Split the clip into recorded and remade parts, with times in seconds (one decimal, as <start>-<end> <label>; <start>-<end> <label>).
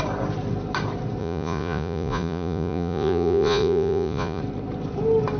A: 0.0-1.2 recorded; 1.2-4.4 remade; 4.4-5.4 recorded